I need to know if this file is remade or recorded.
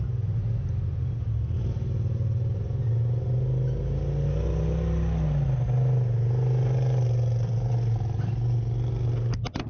recorded